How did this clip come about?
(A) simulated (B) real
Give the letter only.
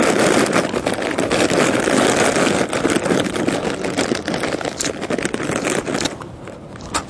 B